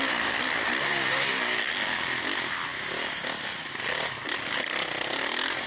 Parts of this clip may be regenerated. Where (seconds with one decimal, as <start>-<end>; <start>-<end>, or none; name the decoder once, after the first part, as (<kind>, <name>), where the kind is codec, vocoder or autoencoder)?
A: none